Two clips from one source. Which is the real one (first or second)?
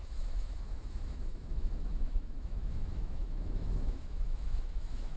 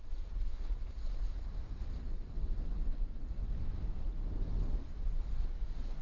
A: second